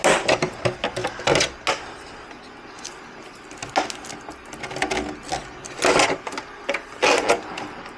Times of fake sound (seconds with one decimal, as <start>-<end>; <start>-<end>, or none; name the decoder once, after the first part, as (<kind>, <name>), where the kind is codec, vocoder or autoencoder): none